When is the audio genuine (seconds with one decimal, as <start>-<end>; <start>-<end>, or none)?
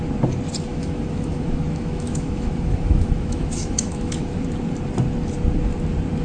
0.0-0.7; 4.4-6.2